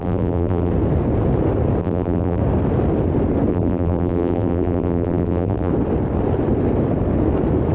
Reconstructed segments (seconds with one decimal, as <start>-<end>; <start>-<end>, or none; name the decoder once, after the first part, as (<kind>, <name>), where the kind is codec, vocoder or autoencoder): 0.0-0.7 (vocoder, BigVGAN v2); 1.8-2.4; 3.5-5.7

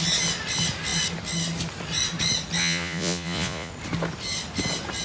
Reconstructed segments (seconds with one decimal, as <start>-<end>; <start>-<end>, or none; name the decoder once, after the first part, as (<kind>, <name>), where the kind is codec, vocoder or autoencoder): 2.6-3.7 (vocoder, Vocos)

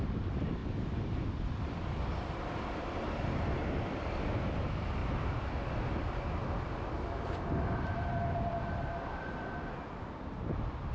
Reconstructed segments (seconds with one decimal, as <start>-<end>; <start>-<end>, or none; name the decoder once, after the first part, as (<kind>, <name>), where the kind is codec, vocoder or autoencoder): 0.6-2.3 (vocoder, BigVGAN v2)